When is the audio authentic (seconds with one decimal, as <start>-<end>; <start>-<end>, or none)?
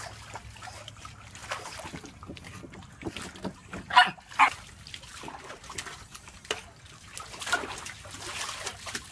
0.0-9.1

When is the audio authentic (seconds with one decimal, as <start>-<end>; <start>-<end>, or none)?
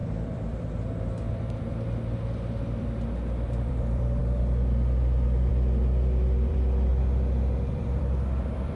6.9-7.7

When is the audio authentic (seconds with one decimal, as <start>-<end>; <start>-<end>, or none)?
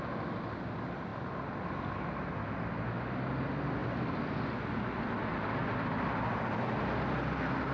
0.0-7.7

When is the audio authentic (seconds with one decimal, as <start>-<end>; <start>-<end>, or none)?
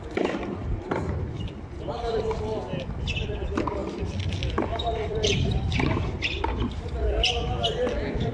0.0-3.8; 5.3-8.3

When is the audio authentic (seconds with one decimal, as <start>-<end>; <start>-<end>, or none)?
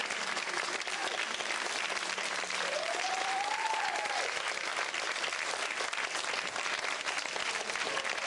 4.7-7.6